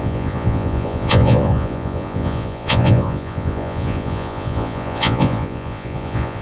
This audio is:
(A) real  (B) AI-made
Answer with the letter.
B